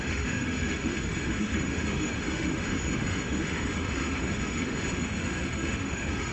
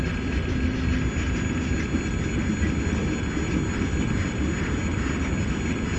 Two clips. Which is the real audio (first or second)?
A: second